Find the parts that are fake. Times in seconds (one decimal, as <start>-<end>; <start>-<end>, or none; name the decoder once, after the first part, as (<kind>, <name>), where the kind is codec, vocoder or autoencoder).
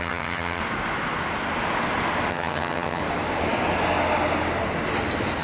0.0-0.6 (vocoder, HiFi-GAN); 2.3-3.0